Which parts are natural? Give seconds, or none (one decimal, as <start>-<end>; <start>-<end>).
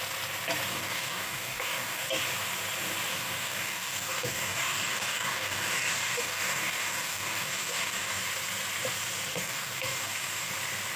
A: 0.0-0.7; 2.2-3.1; 8.2-9.3; 10.5-11.0